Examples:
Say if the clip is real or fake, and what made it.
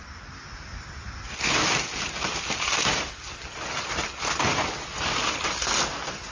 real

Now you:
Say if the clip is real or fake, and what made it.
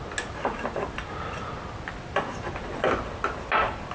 real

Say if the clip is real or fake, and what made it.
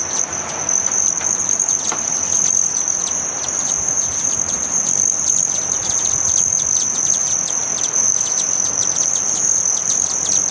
real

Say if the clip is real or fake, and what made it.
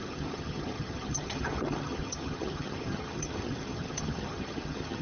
fake, vocoder, HiFi-GAN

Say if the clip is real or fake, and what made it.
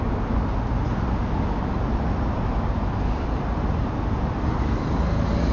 real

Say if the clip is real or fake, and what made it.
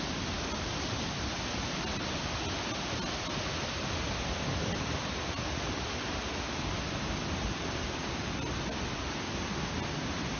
real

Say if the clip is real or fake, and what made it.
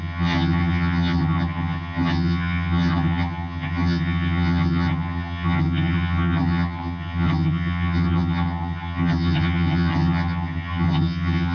fake, vocoder, HiFi-GAN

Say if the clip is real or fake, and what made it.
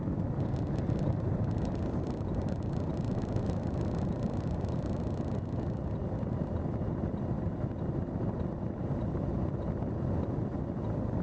real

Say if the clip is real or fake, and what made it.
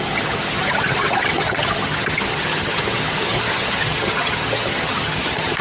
fake, vocoder, HiFi-GAN